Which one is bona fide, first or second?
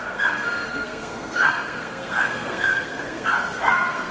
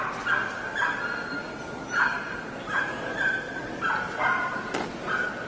second